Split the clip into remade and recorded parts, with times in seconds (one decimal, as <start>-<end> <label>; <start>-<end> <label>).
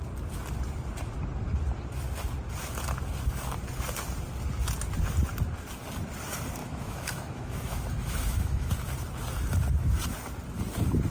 0.0-6.6 recorded; 6.6-8.7 remade; 8.7-11.1 recorded